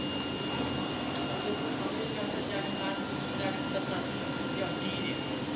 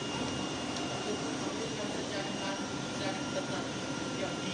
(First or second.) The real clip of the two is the first